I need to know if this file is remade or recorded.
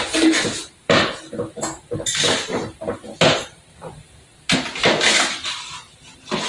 recorded